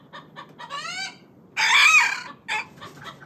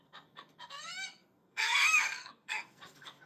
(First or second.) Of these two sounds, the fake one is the second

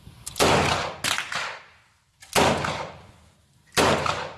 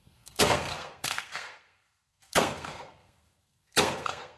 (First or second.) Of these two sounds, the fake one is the second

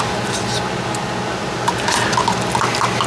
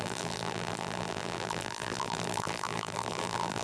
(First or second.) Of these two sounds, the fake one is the second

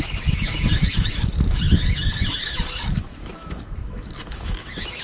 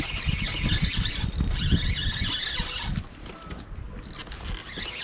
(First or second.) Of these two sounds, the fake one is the first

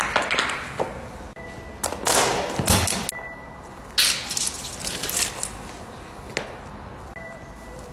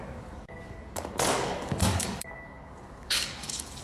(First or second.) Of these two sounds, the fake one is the second